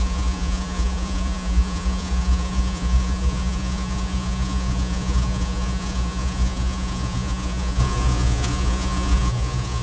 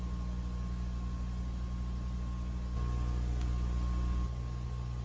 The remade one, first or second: first